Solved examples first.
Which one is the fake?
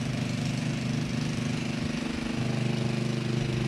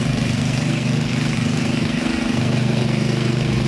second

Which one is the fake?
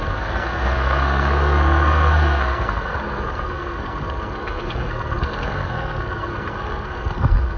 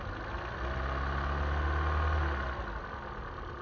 first